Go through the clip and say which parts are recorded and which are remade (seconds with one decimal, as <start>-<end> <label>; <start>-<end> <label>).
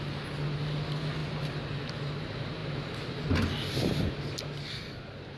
0.0-5.4 recorded